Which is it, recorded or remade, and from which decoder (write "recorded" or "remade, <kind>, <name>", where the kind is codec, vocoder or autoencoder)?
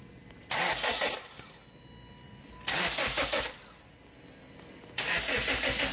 recorded